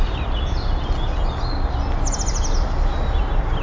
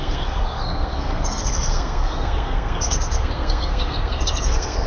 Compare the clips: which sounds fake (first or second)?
second